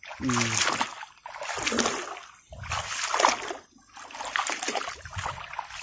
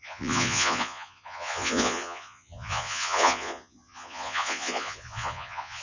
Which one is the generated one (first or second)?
second